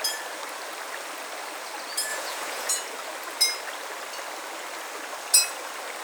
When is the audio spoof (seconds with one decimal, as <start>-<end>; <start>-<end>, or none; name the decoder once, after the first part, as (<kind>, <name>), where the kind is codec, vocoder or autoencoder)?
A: 2.1-2.7 (vocoder, Vocos)